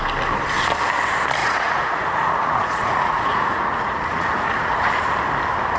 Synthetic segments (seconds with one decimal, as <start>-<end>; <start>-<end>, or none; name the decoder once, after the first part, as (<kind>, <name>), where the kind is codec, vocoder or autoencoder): 1.4-4.9 (vocoder, Vocos)

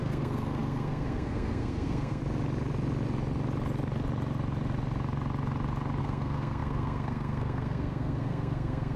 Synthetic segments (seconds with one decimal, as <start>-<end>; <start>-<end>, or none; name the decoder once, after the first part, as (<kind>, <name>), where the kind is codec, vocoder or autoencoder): 0.0-2.2 (codec, SNAC); 6.0-9.0

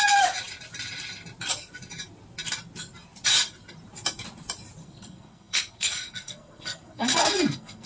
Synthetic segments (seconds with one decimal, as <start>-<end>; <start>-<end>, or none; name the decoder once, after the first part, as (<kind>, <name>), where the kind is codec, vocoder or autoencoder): 4.8-7.9 (codec, SNAC)

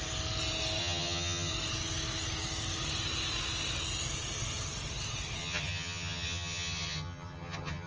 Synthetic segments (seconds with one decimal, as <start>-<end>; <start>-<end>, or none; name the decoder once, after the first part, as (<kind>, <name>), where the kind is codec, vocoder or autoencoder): 0.8-1.5 (vocoder, HiFi-GAN); 5.4-7.9

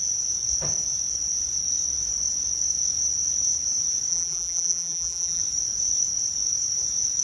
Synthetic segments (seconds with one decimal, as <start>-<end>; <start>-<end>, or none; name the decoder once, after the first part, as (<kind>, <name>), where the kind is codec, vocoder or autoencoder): 4.1-5.4 (vocoder, BigVGAN v2)

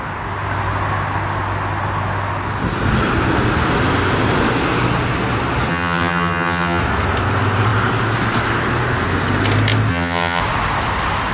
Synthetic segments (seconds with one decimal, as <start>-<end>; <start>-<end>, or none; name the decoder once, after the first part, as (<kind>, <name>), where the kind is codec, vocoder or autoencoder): 5.7-6.8 (vocoder, HiFi-GAN); 9.9-10.4

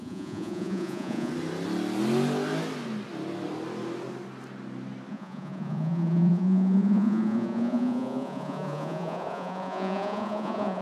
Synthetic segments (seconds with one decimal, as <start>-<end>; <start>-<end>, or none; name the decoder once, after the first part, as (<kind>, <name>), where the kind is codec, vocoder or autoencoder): 0.0-1.3 (vocoder, Vocos); 5.1-10.8